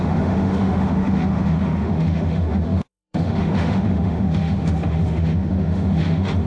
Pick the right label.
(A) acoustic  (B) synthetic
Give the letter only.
B